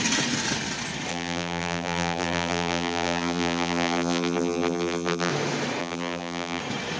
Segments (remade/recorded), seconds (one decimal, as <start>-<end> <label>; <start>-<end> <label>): 0.0-1.1 recorded; 1.1-5.3 remade; 5.3-5.8 recorded; 5.8-6.6 remade; 6.6-7.0 recorded